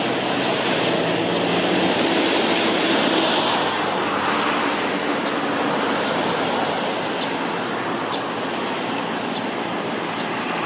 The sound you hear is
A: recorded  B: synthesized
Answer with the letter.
A